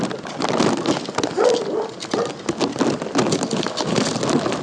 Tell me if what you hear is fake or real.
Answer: real